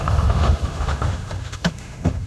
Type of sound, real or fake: fake